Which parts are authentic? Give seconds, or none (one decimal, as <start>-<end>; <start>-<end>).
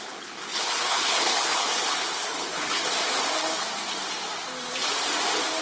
2.8-5.6